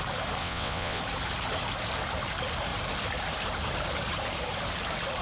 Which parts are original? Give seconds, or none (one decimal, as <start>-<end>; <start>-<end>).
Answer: 0.0-0.4; 1.0-5.2